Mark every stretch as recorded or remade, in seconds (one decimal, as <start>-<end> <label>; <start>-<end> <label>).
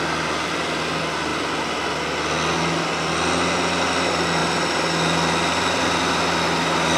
0.0-4.4 recorded; 4.4-5.8 remade; 5.8-7.0 recorded